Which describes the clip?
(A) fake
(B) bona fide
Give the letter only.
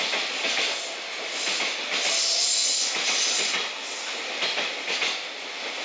B